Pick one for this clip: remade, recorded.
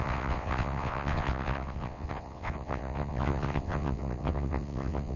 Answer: remade